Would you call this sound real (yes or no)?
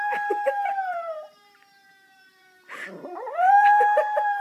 no